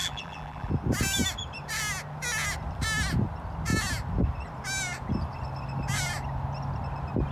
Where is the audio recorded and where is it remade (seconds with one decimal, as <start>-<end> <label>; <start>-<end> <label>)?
0.0-0.7 remade; 0.7-7.3 recorded